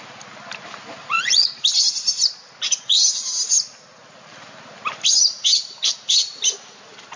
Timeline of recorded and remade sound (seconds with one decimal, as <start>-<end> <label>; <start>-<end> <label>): 0.0-1.0 recorded; 1.0-1.6 remade; 1.6-7.2 recorded